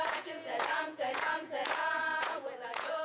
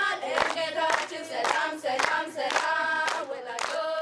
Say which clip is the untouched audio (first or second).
second